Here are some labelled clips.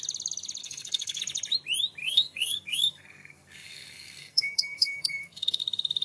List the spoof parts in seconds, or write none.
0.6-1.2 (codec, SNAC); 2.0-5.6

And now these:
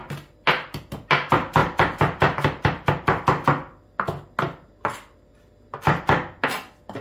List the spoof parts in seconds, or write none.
none